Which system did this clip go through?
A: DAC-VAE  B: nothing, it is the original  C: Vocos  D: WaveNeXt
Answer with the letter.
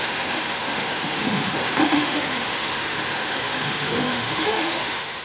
A